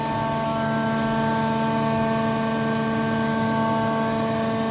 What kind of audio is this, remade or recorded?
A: recorded